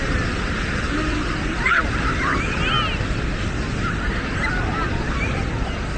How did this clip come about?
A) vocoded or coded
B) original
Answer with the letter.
B